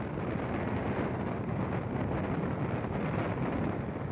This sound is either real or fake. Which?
real